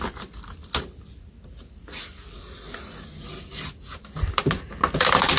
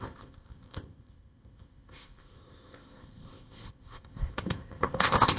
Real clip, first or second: first